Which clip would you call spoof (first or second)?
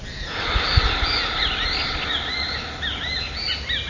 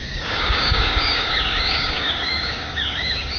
second